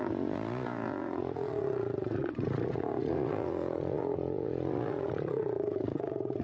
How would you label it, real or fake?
fake